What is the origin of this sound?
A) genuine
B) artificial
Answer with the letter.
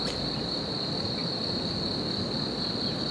A